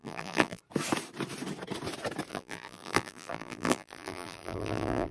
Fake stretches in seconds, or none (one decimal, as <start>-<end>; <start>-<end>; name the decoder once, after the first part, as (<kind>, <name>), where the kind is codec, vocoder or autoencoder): 0.0-0.6 (vocoder, BigVGAN v2); 2.3-5.1